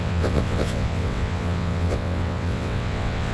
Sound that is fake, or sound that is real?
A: fake